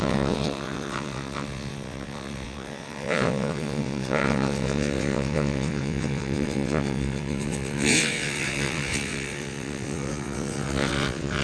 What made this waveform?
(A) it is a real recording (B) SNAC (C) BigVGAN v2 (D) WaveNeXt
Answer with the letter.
D